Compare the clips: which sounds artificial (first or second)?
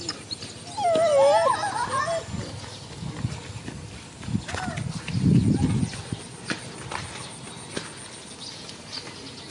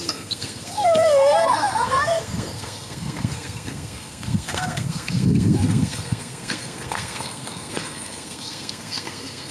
second